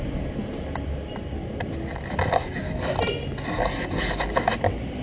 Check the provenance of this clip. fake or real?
real